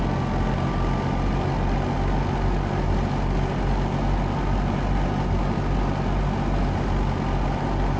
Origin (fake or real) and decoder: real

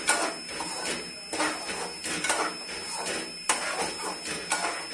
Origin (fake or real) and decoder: real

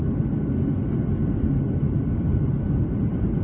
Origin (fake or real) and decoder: real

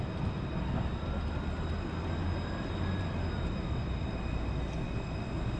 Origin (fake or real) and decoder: real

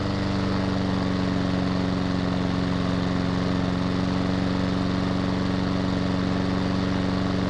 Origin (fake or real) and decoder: real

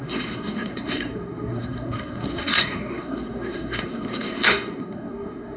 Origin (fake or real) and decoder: fake, codec, SNAC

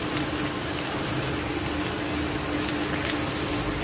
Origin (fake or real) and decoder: real